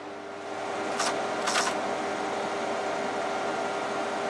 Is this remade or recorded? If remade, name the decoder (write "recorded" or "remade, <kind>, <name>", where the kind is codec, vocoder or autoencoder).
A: recorded